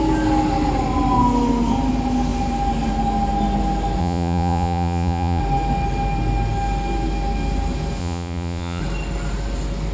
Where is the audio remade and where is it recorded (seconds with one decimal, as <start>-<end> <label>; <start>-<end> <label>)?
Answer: 0.0-4.0 recorded; 4.0-5.4 remade; 5.4-8.0 recorded; 8.0-8.8 remade; 8.8-9.9 recorded